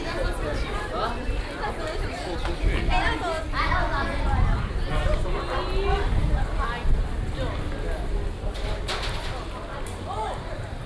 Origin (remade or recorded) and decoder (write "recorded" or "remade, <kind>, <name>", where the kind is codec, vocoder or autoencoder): recorded